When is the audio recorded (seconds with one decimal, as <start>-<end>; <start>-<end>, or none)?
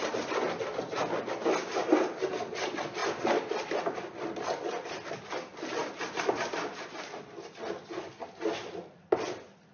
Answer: 0.0-9.7